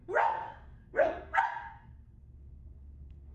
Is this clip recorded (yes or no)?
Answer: no